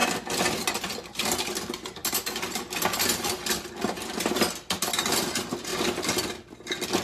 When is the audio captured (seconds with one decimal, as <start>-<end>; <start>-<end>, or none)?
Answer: 0.0-7.0